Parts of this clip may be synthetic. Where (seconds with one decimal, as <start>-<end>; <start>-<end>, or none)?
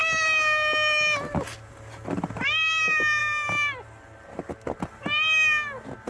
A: none